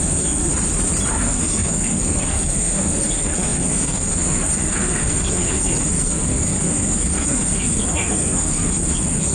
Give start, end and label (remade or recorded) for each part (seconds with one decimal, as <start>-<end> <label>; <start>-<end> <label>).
0.0-0.5 remade; 0.5-1.1 recorded; 1.1-9.3 remade